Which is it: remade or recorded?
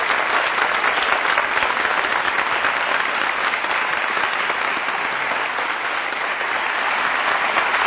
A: recorded